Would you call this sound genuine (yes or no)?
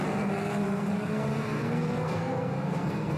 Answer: no